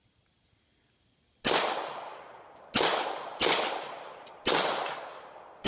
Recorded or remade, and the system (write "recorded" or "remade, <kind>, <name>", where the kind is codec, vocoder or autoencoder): recorded